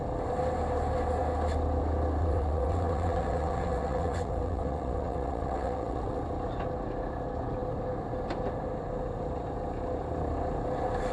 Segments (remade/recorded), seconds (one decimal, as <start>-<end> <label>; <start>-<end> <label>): 0.0-2.2 recorded; 2.2-6.2 remade; 6.2-11.1 recorded